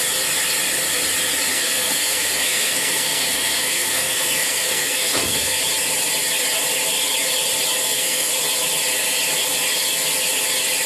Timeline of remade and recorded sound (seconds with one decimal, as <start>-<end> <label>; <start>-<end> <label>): 0.0-1.5 recorded; 1.5-5.6 remade; 5.6-7.8 recorded; 7.8-8.3 remade; 8.3-10.9 recorded